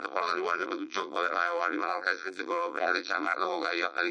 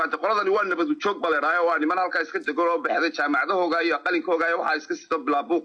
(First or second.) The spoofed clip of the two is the first